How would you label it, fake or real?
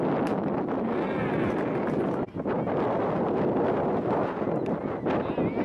real